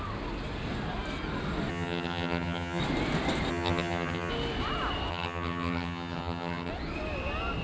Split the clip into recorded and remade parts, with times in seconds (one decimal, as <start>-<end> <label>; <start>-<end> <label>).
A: 0.0-1.7 recorded; 1.7-2.8 remade; 2.8-3.5 recorded; 3.5-4.3 remade; 4.3-5.1 recorded; 5.1-6.7 remade; 6.7-7.6 recorded